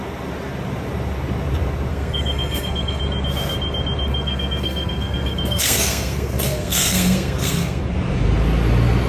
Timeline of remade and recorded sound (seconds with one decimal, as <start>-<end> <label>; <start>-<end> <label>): 0.0-1.9 recorded; 1.9-3.0 remade; 3.0-4.1 recorded; 4.1-7.8 remade; 7.8-9.1 recorded

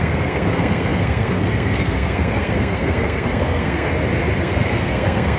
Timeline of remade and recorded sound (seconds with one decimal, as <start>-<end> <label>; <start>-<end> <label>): 0.0-3.9 remade; 3.9-4.4 recorded; 4.4-5.4 remade

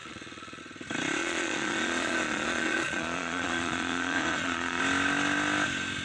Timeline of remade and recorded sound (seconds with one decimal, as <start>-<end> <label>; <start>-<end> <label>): 0.0-0.6 remade; 0.6-1.2 recorded; 1.2-4.8 remade; 4.8-6.0 recorded

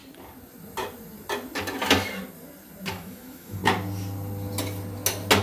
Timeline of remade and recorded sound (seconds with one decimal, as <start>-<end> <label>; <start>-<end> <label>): 0.0-2.9 recorded; 2.9-3.6 remade; 3.6-5.4 recorded

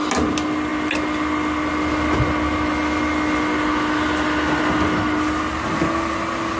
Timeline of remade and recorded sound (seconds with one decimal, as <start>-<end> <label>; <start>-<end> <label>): 0.0-6.6 recorded

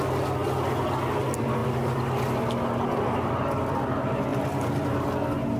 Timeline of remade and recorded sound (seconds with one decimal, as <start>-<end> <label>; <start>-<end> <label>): 0.0-5.6 recorded

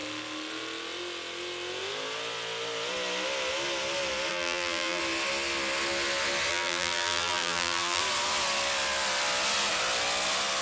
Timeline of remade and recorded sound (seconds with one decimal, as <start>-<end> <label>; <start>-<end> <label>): 0.0-4.3 recorded; 4.3-5.0 remade; 5.0-6.5 recorded; 6.5-8.0 remade; 8.0-10.6 recorded

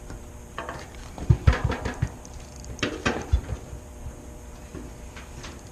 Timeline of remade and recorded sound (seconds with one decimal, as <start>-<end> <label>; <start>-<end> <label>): 0.0-5.7 remade